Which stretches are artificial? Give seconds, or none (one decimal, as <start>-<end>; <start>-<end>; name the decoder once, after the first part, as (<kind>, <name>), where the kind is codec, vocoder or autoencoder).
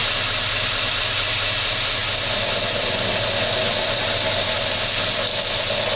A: none